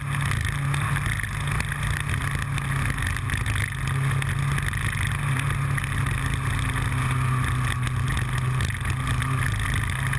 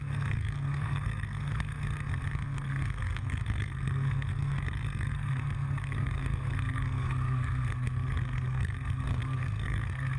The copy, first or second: second